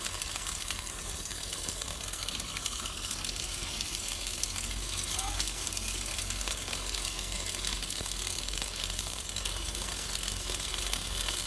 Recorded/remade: remade